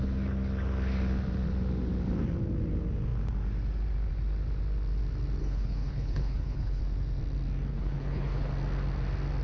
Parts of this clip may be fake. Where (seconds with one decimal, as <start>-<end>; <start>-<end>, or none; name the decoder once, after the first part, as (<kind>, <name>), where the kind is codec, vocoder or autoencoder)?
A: 5.4-6.8 (codec, HILCodec); 7.7-8.5